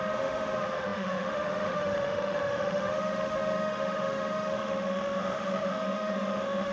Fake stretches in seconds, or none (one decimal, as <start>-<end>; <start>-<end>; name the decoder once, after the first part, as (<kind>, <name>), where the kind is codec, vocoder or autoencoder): 0.0-6.7 (autoencoder, DAC-VAE)